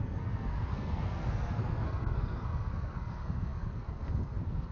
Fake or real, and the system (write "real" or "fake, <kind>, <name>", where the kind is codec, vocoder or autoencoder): fake, codec, SNAC